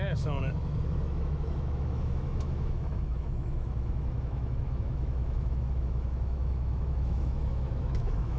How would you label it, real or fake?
fake